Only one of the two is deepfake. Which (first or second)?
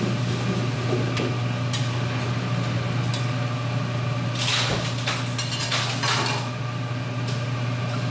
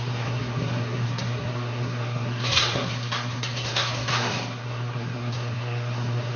second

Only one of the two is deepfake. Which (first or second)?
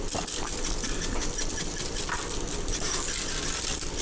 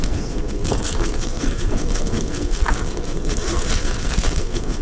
second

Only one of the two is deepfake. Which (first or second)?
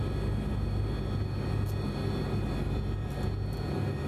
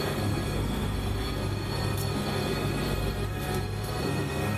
second